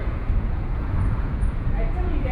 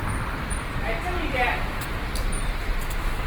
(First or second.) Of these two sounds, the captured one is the second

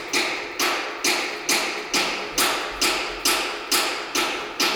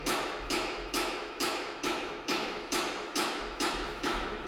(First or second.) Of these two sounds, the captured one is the first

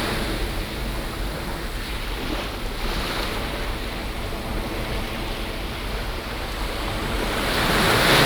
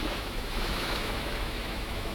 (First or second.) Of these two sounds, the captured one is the first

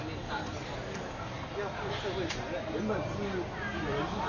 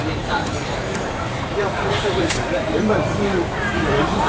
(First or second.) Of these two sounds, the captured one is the first